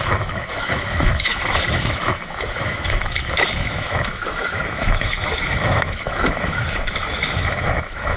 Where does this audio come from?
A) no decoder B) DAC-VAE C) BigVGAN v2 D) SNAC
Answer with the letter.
B